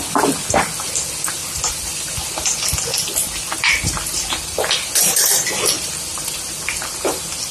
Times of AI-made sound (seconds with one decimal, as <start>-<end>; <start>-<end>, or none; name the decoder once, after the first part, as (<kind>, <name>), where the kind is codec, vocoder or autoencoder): 1.4-2.2 (vocoder, BigVGAN v2); 3.2-6.4